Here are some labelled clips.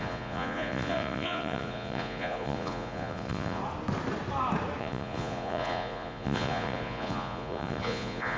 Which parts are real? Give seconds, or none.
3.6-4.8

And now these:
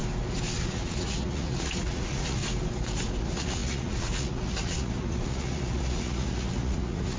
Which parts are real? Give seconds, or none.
0.0-0.6; 2.4-3.2

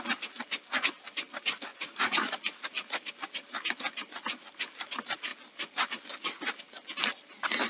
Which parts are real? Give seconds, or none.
0.0-1.7; 3.1-7.7

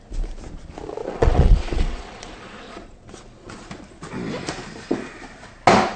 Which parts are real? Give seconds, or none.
0.0-1.0; 3.7-6.0